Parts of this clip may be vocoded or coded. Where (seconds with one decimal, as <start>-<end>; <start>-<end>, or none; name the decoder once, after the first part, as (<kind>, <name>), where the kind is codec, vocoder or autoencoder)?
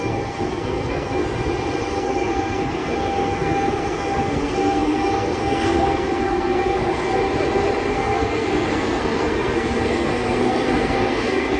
0.0-1.2 (codec, SNAC); 1.9-7.1; 7.9-11.6